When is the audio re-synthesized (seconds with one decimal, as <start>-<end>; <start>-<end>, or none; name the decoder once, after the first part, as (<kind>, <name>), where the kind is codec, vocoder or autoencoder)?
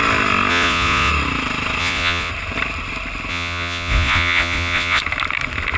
0.5-1.1 (vocoder, Vocos); 1.8-2.3; 3.3-5.0